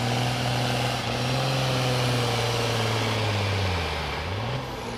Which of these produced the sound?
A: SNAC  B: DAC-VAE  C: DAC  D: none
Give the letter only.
D